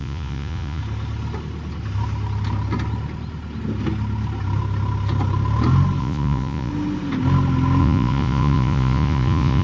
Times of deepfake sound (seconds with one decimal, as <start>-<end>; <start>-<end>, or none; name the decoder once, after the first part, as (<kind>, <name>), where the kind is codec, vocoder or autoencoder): 0.0-0.8 (vocoder, Vocos); 6.0-6.7; 7.8-9.6